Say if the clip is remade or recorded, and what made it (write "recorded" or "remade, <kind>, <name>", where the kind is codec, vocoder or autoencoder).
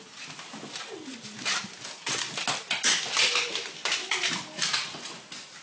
recorded